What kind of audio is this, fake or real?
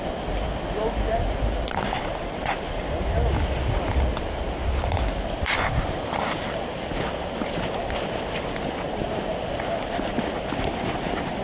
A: real